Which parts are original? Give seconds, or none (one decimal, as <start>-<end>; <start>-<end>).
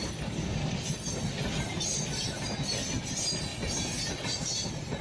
0.0-5.0